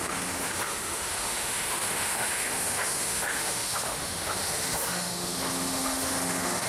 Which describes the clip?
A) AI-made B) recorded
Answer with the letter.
A